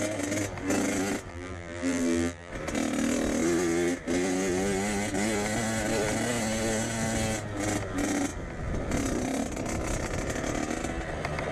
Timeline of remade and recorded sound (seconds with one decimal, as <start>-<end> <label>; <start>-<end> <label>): 0.0-1.3 recorded; 1.3-2.5 remade; 2.5-11.5 recorded